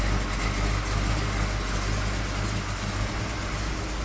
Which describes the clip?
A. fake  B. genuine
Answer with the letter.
B